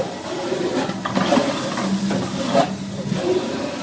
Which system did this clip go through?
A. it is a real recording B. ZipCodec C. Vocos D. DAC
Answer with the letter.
A